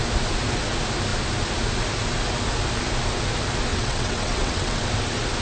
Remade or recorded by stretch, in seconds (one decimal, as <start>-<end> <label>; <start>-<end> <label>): 0.0-3.7 recorded; 3.7-4.8 remade; 4.8-5.4 recorded